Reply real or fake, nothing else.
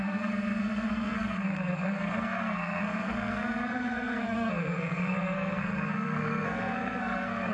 fake